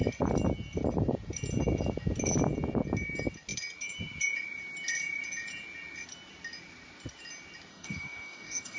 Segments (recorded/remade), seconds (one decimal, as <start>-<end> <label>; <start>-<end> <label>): 0.0-7.7 recorded; 7.7-8.8 remade